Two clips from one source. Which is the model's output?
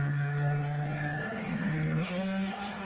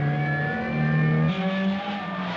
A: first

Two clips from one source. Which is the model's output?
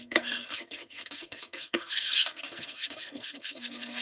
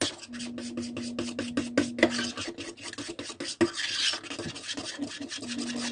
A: first